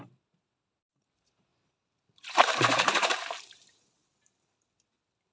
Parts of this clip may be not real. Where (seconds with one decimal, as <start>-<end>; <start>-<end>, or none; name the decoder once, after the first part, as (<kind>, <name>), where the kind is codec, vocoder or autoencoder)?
1.5-4.7 (vocoder, BigVGAN v2)